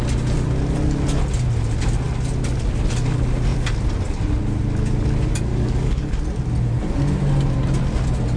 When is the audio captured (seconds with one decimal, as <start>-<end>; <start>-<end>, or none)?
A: 0.0-5.5; 6.1-8.4